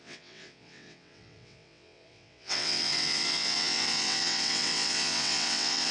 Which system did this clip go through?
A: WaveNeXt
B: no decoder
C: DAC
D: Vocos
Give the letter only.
A